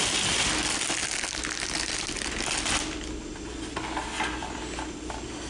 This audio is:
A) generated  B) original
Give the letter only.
B